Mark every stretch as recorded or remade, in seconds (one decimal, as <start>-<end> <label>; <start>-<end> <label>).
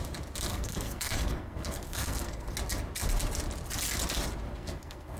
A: 0.0-0.5 recorded; 0.5-2.5 remade; 2.5-4.5 recorded; 4.5-5.2 remade